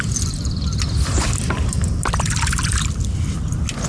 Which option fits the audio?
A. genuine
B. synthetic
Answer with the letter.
A